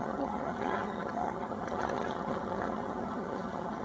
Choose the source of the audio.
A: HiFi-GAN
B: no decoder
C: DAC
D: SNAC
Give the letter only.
A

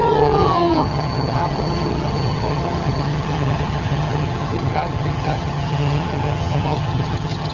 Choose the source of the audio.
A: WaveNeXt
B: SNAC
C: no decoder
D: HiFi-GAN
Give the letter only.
D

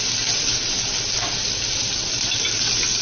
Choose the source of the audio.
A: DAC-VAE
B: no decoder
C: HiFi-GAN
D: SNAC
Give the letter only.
B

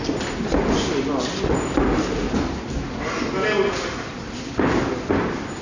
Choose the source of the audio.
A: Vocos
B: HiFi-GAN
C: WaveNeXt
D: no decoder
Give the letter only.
D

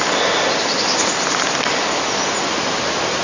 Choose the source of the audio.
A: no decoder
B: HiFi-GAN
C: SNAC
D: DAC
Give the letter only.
A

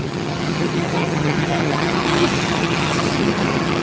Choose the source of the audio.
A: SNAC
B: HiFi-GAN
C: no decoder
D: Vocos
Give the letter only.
B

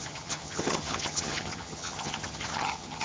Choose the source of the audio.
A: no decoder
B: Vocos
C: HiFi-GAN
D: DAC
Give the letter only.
C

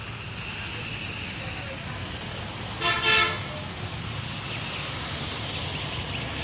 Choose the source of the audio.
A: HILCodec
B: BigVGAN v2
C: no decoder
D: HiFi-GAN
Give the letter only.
C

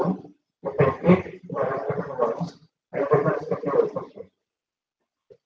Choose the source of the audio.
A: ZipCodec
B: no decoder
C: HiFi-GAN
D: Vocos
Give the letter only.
B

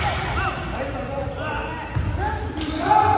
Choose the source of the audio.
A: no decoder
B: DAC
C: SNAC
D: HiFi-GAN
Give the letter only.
A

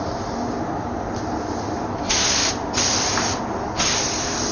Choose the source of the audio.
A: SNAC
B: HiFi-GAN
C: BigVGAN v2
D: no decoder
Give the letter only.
D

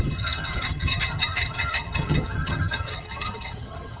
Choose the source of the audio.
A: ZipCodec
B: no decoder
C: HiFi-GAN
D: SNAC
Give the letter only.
C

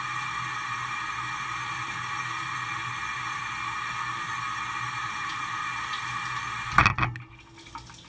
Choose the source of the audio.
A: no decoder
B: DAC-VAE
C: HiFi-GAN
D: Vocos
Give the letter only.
A